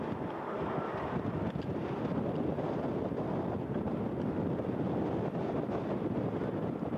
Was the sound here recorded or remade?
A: recorded